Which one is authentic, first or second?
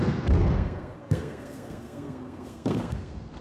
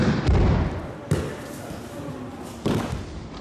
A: second